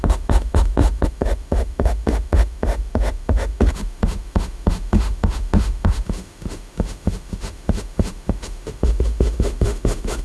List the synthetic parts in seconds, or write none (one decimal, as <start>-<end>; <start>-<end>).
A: 0.0-10.2